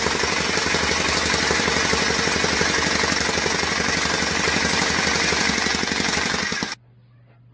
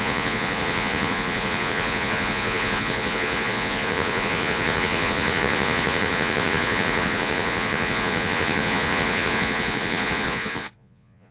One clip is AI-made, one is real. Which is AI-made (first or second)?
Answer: second